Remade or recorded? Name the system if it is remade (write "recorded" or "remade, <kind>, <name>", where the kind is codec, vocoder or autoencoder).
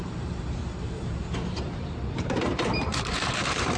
remade, vocoder, BigVGAN v2